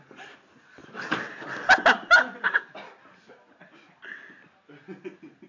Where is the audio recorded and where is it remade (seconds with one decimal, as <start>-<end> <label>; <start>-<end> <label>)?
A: 0.0-5.5 recorded